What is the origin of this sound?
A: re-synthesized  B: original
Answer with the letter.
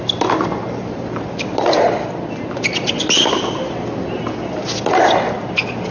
B